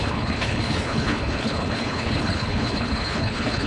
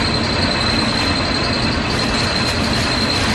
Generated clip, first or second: first